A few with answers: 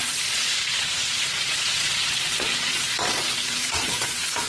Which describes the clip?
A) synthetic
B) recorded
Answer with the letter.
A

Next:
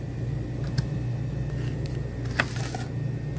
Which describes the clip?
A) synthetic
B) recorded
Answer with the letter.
B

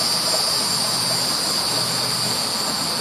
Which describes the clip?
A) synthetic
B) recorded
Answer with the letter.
B